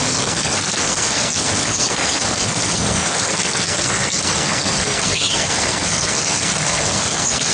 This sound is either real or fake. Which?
fake